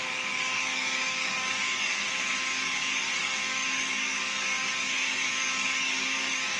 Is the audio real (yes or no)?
no